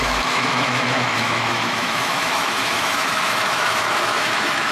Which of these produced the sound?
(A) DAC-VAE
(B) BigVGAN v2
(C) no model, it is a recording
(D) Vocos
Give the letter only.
A